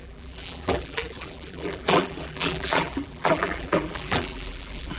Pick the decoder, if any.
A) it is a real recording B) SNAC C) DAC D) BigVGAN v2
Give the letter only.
D